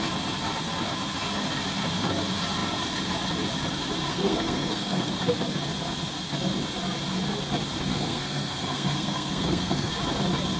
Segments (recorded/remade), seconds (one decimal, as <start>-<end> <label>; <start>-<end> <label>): 0.0-4.1 recorded; 4.1-5.2 remade; 5.2-7.9 recorded; 7.9-9.9 remade; 9.9-10.6 recorded